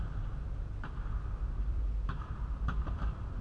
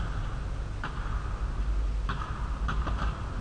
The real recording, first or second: second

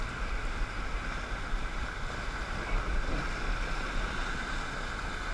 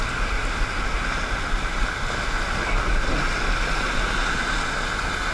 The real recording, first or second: second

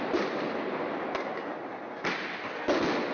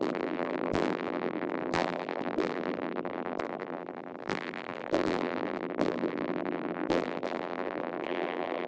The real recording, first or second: first